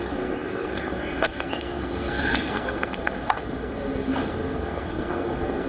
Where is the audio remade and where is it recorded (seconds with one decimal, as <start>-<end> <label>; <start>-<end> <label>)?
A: 0.0-5.7 remade